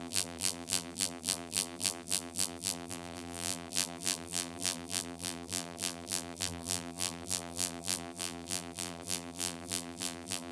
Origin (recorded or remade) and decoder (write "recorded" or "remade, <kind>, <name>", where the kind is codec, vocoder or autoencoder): remade, vocoder, BigVGAN v2